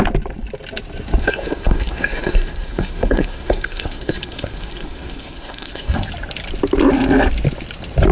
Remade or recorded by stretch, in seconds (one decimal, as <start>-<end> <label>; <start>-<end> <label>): 0.0-1.2 recorded; 1.2-6.1 remade; 6.1-8.1 recorded